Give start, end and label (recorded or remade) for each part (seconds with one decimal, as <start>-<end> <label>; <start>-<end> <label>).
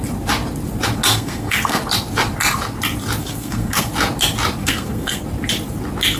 0.0-1.1 recorded; 1.1-1.8 remade; 1.8-3.2 recorded; 3.2-3.9 remade; 3.9-4.6 recorded; 4.6-5.2 remade; 5.2-6.2 recorded